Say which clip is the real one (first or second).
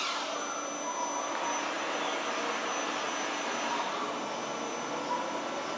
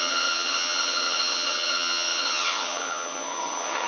first